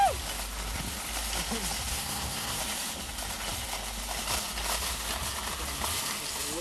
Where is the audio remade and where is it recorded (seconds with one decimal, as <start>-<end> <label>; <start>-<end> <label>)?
0.0-1.9 recorded; 1.9-2.6 remade; 2.6-6.6 recorded